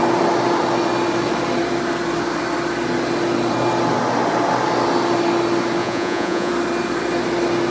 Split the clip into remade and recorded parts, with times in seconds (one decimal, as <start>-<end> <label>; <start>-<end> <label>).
0.0-5.8 recorded; 5.8-6.5 remade; 6.5-7.7 recorded